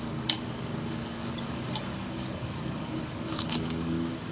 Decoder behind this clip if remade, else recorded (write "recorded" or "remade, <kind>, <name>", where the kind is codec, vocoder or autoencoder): remade, codec, DAC